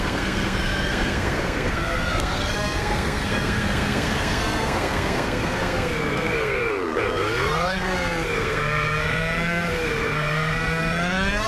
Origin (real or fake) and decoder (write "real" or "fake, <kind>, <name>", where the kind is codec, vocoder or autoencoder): fake, codec, SNAC